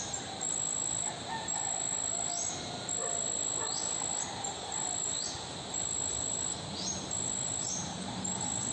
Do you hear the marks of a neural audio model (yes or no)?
no